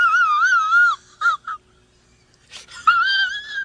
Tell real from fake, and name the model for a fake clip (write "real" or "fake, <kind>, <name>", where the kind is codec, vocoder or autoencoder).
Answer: real